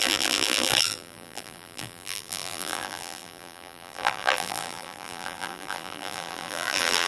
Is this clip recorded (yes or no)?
no